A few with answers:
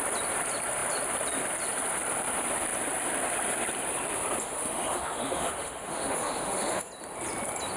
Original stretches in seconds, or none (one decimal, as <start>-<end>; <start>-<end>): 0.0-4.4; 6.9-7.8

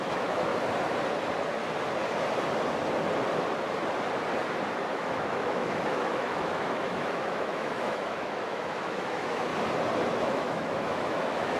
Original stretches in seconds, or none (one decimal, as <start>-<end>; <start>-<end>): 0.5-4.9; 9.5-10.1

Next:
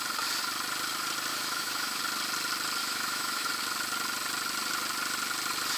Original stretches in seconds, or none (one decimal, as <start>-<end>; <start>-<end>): 0.0-1.3; 2.0-2.8; 3.5-5.8